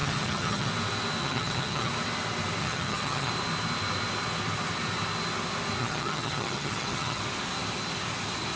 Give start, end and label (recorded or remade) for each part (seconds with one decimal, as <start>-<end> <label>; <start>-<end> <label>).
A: 0.0-0.7 remade; 0.7-1.2 recorded; 1.2-1.9 remade; 1.9-2.6 recorded; 2.6-3.3 remade; 3.3-5.8 recorded; 5.8-7.2 remade; 7.2-8.6 recorded